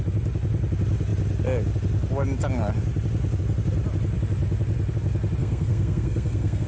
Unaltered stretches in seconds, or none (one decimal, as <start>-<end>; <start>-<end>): 0.0-5.4